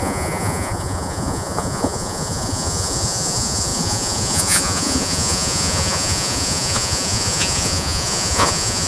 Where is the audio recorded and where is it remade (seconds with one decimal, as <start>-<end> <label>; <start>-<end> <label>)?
0.0-8.9 remade

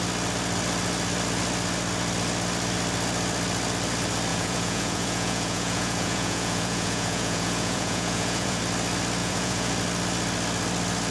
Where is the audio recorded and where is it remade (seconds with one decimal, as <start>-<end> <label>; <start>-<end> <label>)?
0.0-4.3 recorded; 4.3-8.6 remade; 8.6-9.2 recorded; 9.2-9.7 remade; 9.7-11.1 recorded

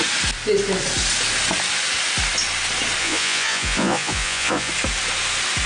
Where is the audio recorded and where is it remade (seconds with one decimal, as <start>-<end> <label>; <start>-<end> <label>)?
0.0-3.0 recorded; 3.0-4.7 remade; 4.7-5.7 recorded

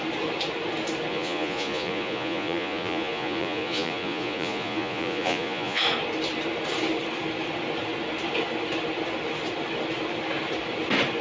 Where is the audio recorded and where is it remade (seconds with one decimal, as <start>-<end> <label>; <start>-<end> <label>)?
0.0-1.1 recorded; 1.1-5.8 remade; 5.8-11.2 recorded

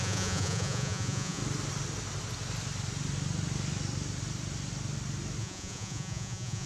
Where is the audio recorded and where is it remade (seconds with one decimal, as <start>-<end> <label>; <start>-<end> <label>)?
0.0-1.4 remade; 1.4-5.4 recorded; 5.4-6.7 remade

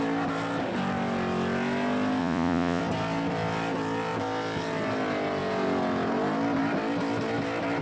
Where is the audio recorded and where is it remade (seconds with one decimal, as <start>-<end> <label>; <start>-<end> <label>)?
0.0-2.2 recorded; 2.2-2.8 remade; 2.8-7.8 recorded